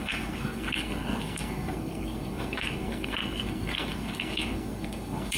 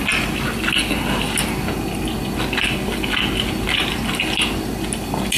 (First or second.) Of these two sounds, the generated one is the first